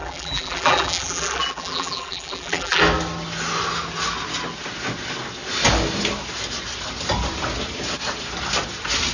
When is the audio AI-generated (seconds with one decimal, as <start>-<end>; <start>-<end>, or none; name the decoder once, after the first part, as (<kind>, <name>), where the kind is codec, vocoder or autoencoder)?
0.0-2.8 (vocoder, BigVGAN v2)